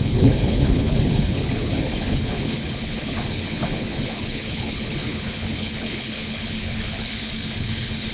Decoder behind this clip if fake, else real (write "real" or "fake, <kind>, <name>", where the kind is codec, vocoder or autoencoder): fake, codec, HILCodec